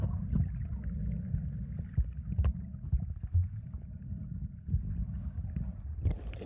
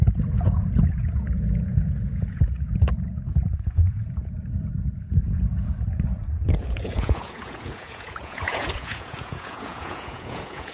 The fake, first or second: second